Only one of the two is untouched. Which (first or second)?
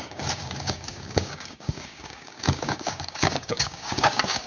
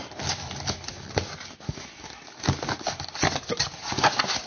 second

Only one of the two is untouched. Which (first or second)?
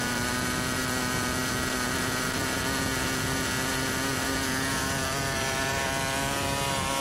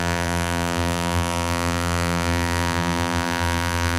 first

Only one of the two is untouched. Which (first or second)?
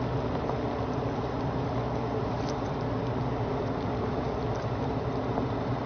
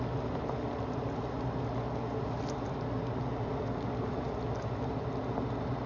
second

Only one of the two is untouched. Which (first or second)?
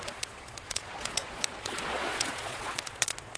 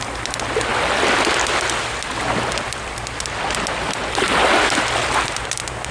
second